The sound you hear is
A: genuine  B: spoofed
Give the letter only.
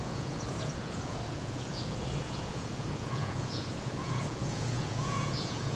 B